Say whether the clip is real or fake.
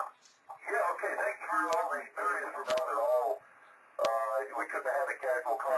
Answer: real